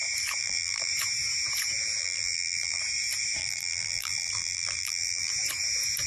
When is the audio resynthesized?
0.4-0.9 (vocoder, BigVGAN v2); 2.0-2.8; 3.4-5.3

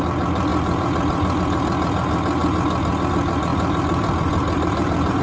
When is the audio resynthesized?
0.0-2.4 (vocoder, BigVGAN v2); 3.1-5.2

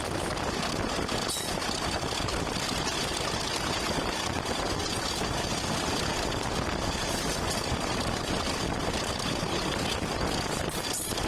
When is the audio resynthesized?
none

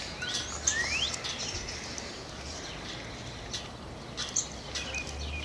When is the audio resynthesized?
none

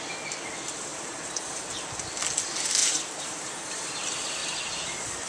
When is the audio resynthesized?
0.9-1.6 (vocoder, BigVGAN v2); 2.8-3.9

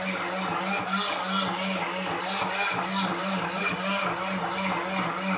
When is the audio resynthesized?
3.1-3.6 (vocoder, BigVGAN v2)

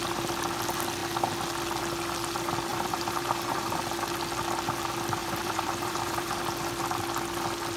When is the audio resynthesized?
2.7-3.8 (vocoder, BigVGAN v2); 5.2-6.4

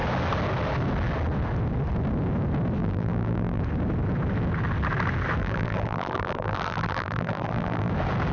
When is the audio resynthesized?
2.8-3.6 (vocoder, BigVGAN v2); 5.4-7.9